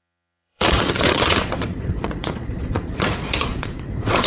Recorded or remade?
remade